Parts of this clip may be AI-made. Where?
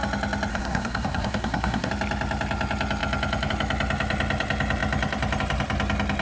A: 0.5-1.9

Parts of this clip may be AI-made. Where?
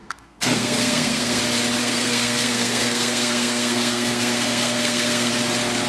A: 0.0-1.4; 1.8-5.3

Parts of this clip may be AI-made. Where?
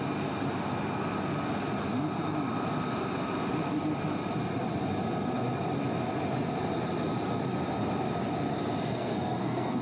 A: 8.9-9.8